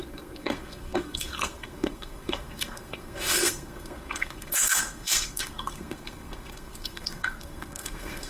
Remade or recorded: remade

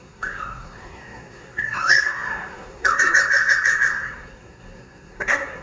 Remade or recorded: remade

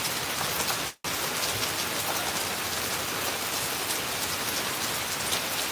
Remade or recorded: recorded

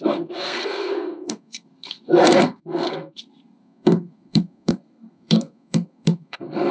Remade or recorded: remade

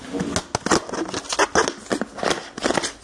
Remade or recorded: recorded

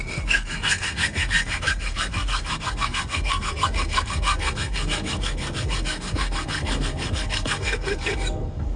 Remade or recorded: remade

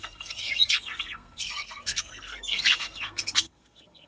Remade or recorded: remade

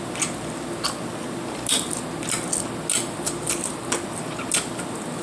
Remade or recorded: recorded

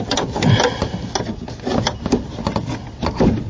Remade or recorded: recorded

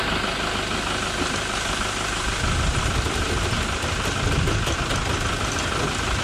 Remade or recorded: recorded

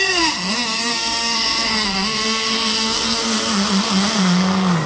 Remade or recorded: remade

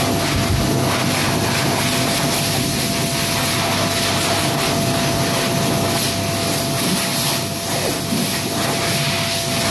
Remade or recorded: recorded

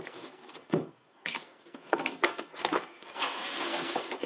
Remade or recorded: remade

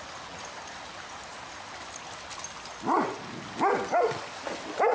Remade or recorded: recorded